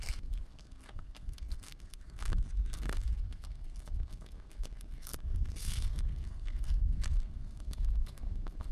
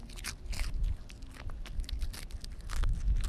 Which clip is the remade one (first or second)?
first